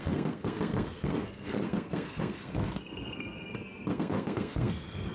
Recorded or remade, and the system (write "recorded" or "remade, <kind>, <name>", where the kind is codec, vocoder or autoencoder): remade, codec, SNAC